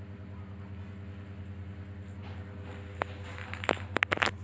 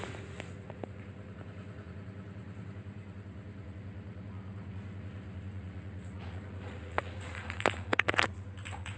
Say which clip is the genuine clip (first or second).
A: first